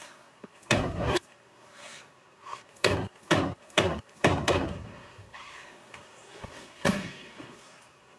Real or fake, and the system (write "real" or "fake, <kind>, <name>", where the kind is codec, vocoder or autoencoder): fake, codec, SNAC